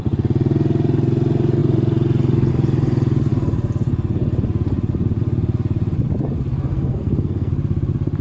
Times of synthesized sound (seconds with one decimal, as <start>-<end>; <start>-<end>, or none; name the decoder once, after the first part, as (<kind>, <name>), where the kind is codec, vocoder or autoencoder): 6.7-7.5 (codec, SNAC)